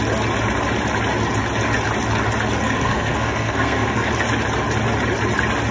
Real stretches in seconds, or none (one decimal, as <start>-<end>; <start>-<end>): 0.0-2.6; 4.1-5.7